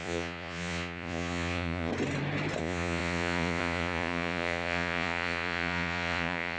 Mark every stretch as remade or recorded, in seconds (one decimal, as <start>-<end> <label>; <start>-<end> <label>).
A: 0.0-1.9 remade; 1.9-2.6 recorded; 2.6-6.6 remade

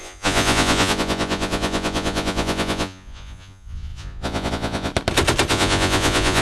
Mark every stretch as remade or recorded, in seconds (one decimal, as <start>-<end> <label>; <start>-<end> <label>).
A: 0.0-4.9 remade; 4.9-5.5 recorded; 5.5-6.4 remade

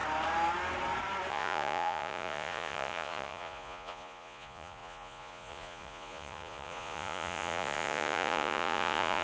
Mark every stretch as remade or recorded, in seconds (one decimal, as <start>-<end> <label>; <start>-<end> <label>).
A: 0.0-1.3 recorded; 1.3-9.2 remade

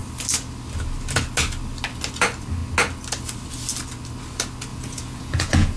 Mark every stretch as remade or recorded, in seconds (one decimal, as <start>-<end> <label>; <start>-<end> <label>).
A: 0.0-4.7 recorded; 4.7-5.8 remade

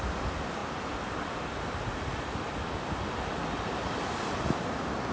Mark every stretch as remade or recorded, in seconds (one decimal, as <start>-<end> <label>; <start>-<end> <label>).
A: 0.0-5.1 recorded